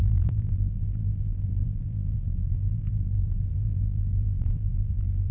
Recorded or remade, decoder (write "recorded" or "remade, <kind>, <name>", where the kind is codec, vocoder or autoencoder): remade, vocoder, BigVGAN v2